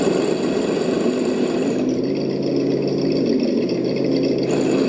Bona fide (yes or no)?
yes